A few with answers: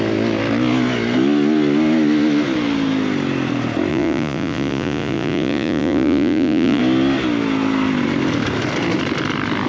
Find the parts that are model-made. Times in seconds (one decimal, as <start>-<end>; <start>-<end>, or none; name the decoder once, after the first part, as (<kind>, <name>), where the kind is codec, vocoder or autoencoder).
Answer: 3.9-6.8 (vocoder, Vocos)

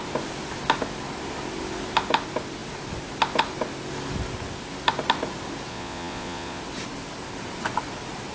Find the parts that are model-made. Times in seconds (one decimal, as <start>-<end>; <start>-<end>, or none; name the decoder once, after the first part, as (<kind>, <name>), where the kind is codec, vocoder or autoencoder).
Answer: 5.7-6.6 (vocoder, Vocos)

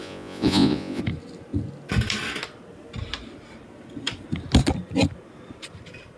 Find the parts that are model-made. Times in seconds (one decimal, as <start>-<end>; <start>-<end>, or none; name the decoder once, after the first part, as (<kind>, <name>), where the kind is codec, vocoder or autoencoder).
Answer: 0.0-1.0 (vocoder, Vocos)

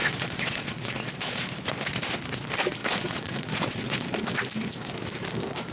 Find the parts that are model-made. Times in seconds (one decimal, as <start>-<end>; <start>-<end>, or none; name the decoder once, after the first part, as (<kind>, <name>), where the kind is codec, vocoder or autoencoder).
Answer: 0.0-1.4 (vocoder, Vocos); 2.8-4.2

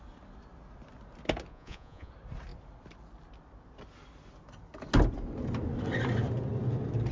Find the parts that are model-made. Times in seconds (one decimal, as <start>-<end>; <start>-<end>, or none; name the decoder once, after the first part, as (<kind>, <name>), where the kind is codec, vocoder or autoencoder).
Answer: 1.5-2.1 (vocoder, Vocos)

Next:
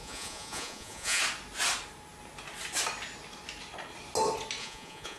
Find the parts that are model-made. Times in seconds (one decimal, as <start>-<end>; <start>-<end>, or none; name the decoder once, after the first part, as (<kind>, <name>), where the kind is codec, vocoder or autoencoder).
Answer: 0.0-1.2 (vocoder, Vocos); 4.6-5.2

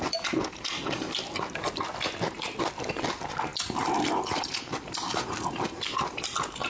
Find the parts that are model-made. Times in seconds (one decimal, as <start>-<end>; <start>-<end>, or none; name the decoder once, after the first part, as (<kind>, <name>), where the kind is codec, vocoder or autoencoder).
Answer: none

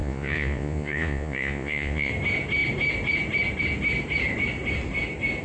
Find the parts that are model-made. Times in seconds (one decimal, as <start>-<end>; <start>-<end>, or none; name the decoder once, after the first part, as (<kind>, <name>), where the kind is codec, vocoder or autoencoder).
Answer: 0.0-2.1 (vocoder, Vocos)